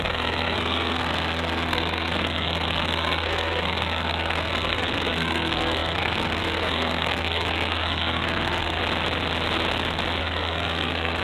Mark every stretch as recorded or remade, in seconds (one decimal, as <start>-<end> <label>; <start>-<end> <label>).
0.0-8.8 remade; 8.8-10.2 recorded; 10.2-11.2 remade